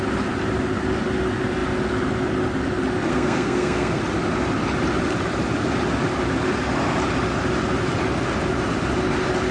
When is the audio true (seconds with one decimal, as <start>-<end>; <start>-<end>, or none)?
0.0-3.1; 4.0-9.5